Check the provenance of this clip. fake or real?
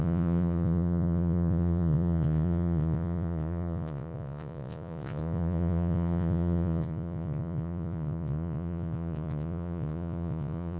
fake